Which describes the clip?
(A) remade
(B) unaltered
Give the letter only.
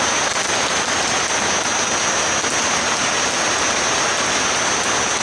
B